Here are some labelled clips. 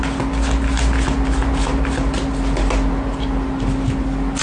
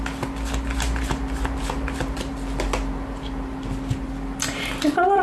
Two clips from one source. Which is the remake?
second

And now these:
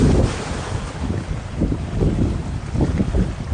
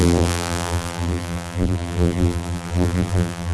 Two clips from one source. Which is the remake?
second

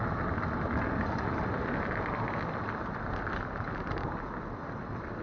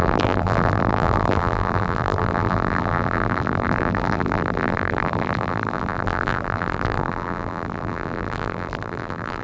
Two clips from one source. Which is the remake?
second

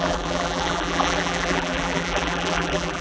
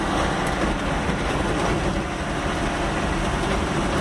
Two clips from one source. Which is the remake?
first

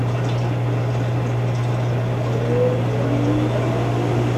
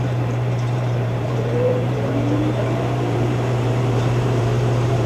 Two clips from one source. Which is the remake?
second